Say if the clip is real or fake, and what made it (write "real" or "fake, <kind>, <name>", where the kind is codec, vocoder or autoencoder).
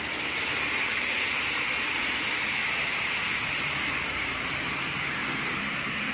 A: fake, vocoder, BigVGAN v2